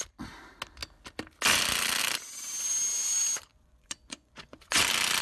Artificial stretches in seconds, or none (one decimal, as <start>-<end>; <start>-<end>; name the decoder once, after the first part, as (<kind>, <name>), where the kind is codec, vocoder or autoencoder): 3.5-4.8 (vocoder, Vocos)